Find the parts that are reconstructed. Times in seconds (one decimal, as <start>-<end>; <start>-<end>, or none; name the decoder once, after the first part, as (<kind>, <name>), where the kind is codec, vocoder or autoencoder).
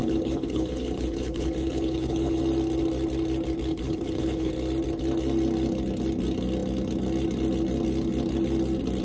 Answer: 0.0-2.4 (codec, HILCodec); 3.7-4.5